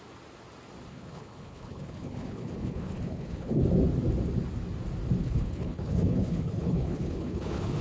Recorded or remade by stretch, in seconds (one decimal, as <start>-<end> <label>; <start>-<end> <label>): 0.0-0.9 recorded; 0.9-3.6 remade; 3.6-5.2 recorded; 5.2-7.8 remade